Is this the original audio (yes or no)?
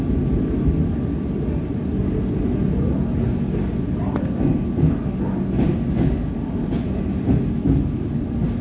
yes